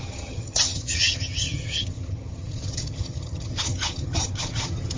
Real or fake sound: fake